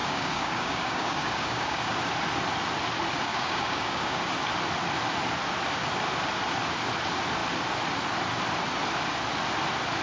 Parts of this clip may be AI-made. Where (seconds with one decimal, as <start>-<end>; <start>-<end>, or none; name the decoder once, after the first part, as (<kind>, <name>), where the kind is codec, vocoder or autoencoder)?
0.0-1.9 (codec, DAC); 3.3-4.3